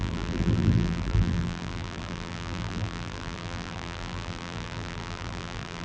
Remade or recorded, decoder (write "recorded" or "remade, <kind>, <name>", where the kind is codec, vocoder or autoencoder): remade, vocoder, BigVGAN v2